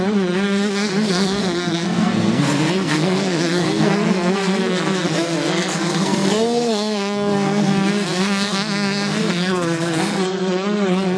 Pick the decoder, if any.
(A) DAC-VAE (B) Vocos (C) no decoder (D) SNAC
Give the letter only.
D